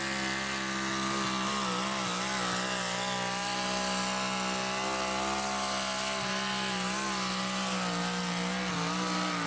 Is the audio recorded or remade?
recorded